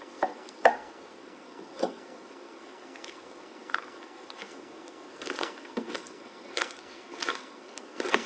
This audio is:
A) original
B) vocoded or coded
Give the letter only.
B